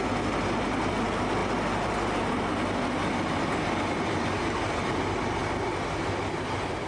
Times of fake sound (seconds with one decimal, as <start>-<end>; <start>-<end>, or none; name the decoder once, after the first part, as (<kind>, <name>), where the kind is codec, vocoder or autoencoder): none